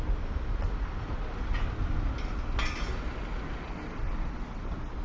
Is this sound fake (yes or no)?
no